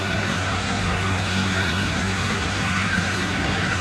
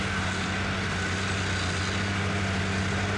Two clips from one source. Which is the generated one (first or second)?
first